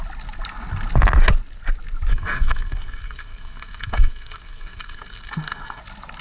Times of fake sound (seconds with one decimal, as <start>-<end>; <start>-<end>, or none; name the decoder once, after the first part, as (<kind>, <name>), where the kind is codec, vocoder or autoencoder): 2.1-5.8 (codec, SNAC)

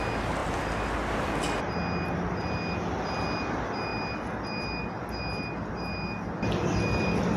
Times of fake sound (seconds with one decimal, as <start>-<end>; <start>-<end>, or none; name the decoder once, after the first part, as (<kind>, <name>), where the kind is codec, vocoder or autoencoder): 0.4-1.6 (vocoder, BigVGAN v2)

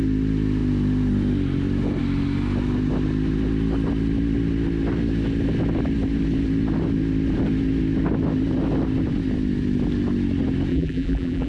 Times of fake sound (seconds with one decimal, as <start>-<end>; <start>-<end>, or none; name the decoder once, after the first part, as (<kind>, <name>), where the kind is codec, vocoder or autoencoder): 10.7-11.5 (vocoder, BigVGAN v2)

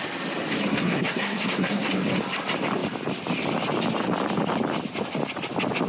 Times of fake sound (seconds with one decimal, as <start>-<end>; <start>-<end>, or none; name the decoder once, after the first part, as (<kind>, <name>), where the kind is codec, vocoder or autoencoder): 0.6-1.9 (codec, SNAC)

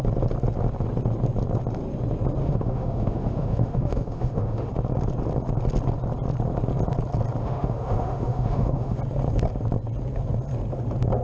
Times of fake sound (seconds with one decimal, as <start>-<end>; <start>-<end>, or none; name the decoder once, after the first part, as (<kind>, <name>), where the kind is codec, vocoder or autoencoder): 2.4-4.7 (autoencoder, DAC-VAE); 7.4-9.0